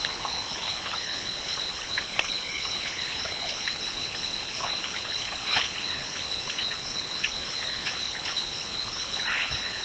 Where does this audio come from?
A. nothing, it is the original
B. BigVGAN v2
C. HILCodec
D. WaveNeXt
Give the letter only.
C